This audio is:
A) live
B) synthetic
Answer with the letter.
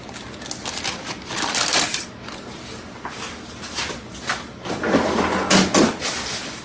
A